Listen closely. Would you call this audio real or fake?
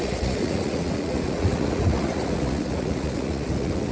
fake